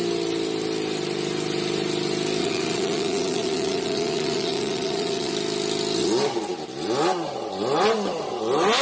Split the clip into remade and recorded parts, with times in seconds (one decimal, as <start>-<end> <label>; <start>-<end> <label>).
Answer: 0.0-2.4 recorded; 2.4-5.3 remade; 5.3-8.8 recorded